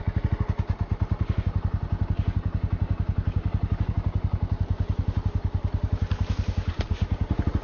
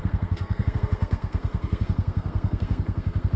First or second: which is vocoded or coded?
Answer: second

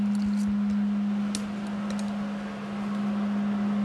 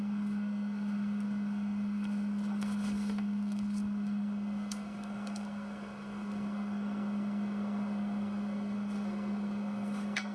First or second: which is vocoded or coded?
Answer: second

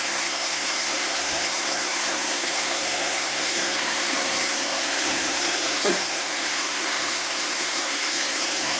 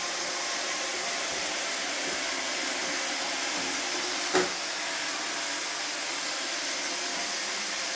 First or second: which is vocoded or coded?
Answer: first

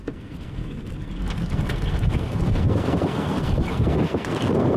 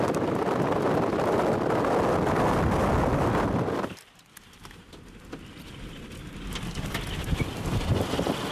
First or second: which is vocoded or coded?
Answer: first